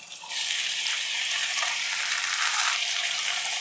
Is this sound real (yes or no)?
no